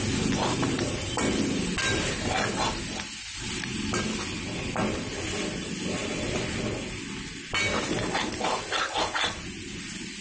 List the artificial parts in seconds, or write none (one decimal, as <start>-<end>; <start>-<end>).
none